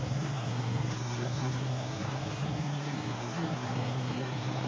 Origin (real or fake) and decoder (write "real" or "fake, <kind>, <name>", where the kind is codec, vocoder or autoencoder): fake, codec, SNAC